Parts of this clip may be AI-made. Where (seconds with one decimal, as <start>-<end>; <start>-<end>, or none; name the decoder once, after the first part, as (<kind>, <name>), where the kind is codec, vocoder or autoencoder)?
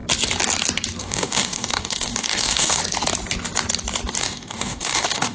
1.0-2.8 (codec, DAC); 4.2-5.3